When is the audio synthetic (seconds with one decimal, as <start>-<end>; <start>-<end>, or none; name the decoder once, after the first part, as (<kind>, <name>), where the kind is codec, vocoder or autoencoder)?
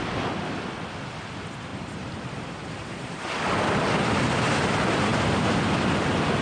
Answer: 1.7-3.2 (vocoder, BigVGAN v2)